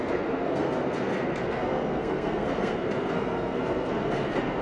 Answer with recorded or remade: remade